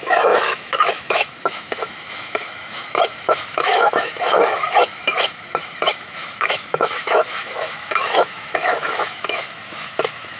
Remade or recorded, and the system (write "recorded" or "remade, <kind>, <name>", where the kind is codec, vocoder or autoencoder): remade, autoencoder, DAC-VAE